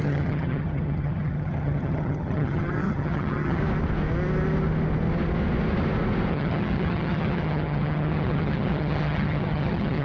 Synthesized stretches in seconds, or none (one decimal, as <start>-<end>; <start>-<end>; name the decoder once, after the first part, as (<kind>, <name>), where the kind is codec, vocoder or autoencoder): 0.0-3.6 (vocoder, HiFi-GAN); 6.3-10.0